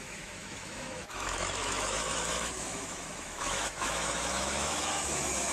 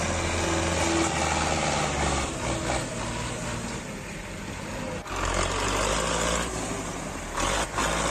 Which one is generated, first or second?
first